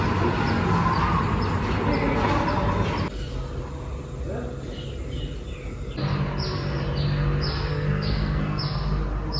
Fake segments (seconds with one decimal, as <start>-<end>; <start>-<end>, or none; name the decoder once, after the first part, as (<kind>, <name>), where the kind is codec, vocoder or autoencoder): 7.7-8.6 (codec, SNAC)